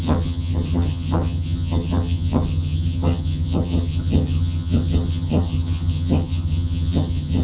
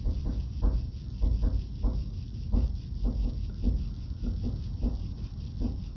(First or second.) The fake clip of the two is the first